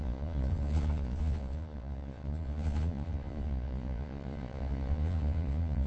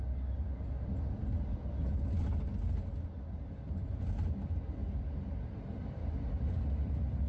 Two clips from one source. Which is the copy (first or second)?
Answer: first